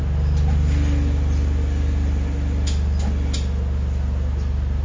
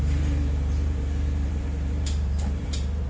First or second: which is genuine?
first